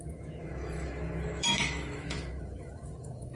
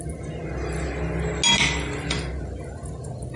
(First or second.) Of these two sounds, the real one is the second